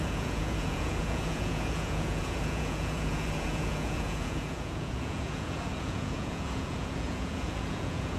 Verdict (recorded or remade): remade